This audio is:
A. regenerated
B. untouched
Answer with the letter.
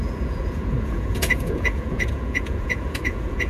A